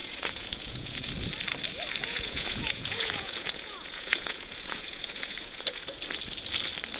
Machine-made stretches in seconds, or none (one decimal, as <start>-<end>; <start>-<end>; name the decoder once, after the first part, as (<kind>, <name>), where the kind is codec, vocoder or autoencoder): 0.0-1.1 (vocoder, Vocos); 2.0-5.8